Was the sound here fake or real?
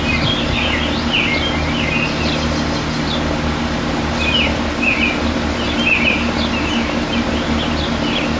real